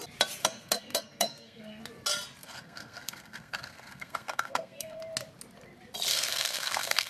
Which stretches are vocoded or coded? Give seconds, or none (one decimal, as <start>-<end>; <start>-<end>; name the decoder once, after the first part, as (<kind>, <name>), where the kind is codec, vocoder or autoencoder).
0.4-1.8 (codec, SNAC); 2.4-5.0; 6.1-7.1